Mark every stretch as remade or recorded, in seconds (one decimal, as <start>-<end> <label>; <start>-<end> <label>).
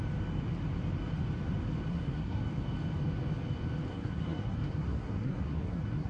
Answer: 0.0-1.9 recorded; 1.9-2.4 remade; 2.4-3.9 recorded; 3.9-6.1 remade